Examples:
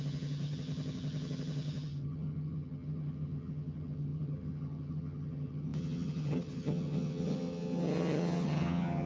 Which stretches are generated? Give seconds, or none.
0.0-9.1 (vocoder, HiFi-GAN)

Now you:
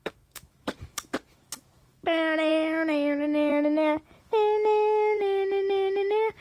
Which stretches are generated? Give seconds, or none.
0.0-2.5 (autoencoder, DAC-VAE); 3.5-6.4